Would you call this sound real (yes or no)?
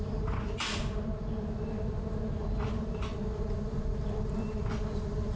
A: yes